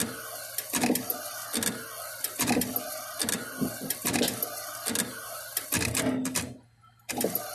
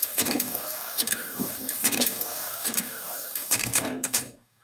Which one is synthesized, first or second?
second